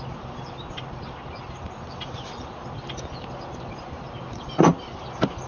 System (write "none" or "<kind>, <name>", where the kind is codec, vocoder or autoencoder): none